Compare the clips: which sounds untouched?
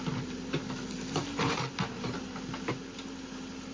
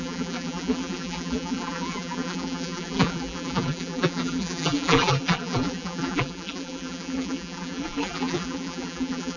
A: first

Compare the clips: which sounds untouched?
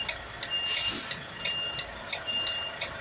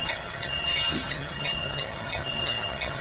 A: first